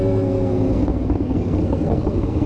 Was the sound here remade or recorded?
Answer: remade